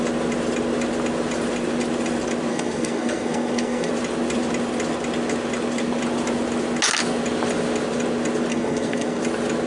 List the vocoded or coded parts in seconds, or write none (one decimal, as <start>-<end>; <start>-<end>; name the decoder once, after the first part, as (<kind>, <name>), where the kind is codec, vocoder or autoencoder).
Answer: 2.5-3.9 (codec, SNAC); 8.5-9.2